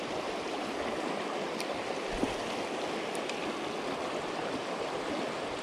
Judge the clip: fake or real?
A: real